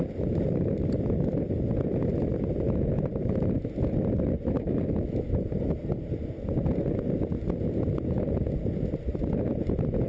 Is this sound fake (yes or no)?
no